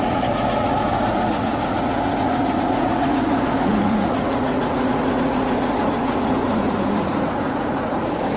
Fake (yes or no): yes